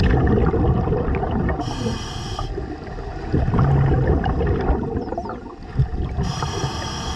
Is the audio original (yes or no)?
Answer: yes